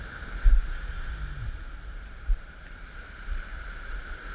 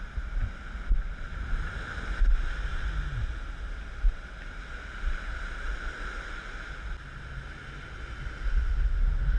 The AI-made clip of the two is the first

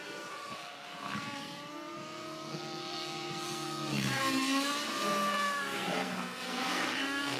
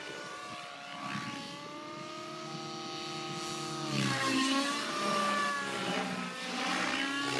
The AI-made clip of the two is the first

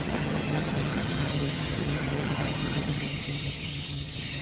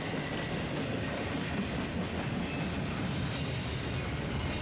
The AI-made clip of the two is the first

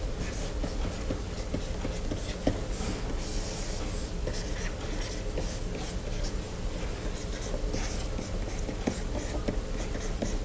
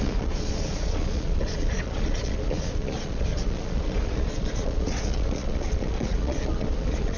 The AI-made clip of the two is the second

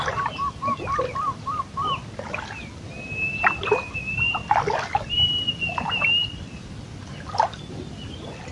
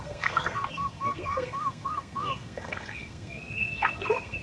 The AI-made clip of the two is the second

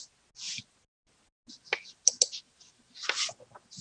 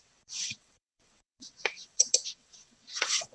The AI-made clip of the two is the second